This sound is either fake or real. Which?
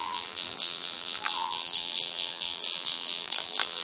fake